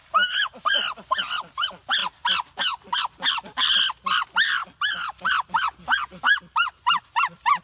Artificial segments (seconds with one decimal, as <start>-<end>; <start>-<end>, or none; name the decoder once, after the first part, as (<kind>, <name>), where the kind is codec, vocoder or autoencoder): none